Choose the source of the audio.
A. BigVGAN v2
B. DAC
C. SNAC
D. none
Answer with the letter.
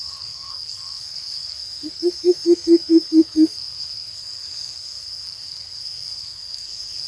C